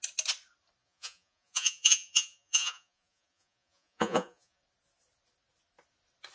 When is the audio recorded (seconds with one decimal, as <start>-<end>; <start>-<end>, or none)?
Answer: 0.0-0.8; 4.6-6.3